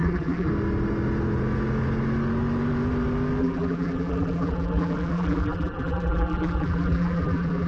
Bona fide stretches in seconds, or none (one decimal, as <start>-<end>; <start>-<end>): 0.5-3.4